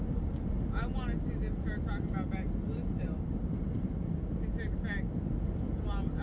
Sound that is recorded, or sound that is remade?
recorded